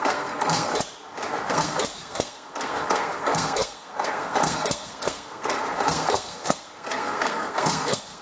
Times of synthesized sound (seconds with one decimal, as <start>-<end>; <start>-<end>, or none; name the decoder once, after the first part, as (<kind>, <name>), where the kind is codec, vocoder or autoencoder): 0.0-0.7 (codec, SNAC); 1.3-8.2

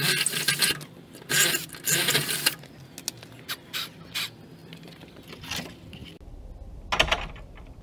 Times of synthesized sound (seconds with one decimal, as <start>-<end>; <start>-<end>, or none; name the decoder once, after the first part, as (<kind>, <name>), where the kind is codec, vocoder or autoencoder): none

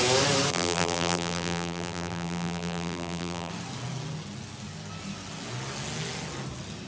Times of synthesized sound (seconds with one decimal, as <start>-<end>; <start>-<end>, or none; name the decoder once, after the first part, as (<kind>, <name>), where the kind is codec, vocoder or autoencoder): 0.5-3.5 (vocoder, BigVGAN v2)